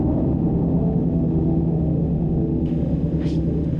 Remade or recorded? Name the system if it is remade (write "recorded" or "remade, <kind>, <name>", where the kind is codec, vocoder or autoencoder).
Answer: remade, autoencoder, DAC-VAE